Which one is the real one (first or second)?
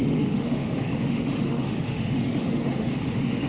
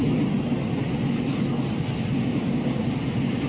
second